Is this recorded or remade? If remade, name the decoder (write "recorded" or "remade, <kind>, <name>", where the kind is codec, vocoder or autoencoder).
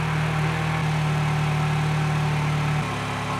recorded